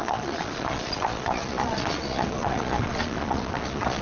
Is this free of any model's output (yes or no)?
no